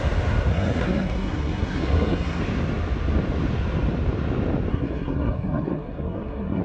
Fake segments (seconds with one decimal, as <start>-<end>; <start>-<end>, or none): 0.5-2.4; 4.7-6.6